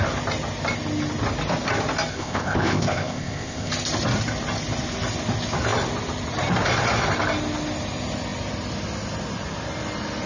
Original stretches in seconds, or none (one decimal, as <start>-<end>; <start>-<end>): 0.0-2.1; 3.7-10.3